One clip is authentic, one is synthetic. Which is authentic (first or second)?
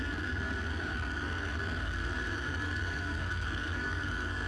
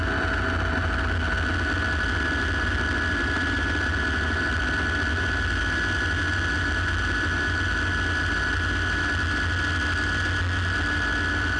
second